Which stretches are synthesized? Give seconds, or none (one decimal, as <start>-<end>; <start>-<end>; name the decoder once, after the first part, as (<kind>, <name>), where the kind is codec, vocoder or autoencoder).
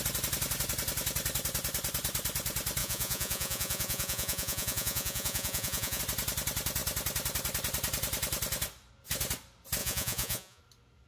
2.8-6.0 (vocoder, Vocos); 9.8-10.6